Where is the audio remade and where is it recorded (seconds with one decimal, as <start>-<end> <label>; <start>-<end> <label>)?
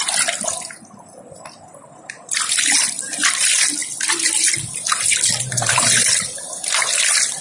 0.0-7.4 remade